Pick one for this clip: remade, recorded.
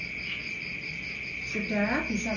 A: recorded